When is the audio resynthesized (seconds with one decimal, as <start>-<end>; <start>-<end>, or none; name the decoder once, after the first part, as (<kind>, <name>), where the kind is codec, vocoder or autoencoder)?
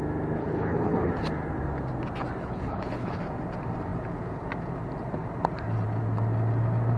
0.4-1.1 (codec, HILCodec); 2.4-3.2